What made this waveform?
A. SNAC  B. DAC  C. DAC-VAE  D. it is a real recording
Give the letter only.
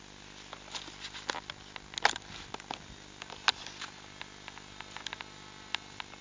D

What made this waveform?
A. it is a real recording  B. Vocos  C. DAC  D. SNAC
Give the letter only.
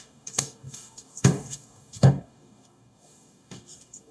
C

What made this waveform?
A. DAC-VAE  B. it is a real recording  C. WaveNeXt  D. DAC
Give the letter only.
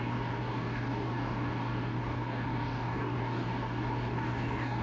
D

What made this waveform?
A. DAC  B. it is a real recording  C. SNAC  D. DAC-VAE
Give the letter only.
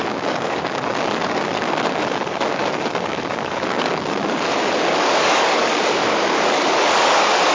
A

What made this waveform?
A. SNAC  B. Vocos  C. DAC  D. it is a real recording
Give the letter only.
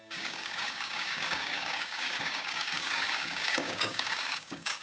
C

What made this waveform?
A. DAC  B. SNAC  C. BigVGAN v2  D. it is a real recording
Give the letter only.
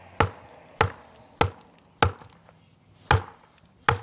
D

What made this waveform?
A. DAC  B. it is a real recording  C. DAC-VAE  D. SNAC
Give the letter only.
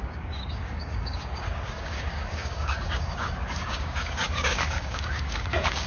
A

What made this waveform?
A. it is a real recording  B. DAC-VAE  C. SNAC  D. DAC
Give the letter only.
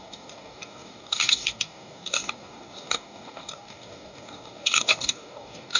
D